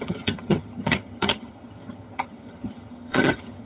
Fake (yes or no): yes